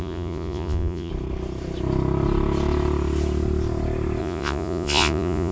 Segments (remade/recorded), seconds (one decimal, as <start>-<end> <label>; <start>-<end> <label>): 0.0-1.1 remade; 1.1-4.2 recorded; 4.2-5.5 remade